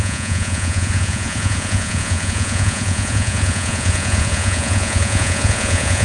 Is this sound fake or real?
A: fake